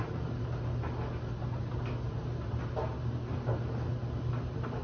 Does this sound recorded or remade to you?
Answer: recorded